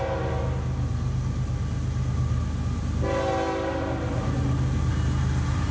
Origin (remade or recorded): recorded